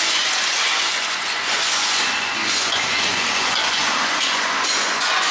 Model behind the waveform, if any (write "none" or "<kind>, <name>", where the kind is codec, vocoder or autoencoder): vocoder, Vocos